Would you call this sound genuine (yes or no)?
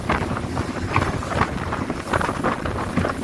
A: no